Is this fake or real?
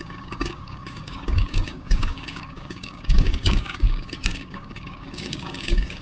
fake